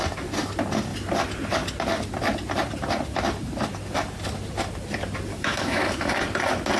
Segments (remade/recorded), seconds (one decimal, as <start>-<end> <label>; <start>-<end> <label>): 0.0-5.3 recorded; 5.3-6.1 remade; 6.1-6.8 recorded